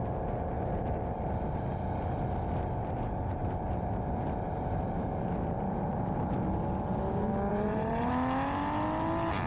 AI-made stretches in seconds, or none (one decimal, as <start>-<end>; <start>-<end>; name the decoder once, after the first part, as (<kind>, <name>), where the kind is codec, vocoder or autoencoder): 3.4-6.4 (vocoder, BigVGAN v2); 7.5-8.1